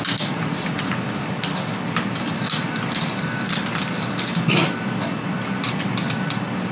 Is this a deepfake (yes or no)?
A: no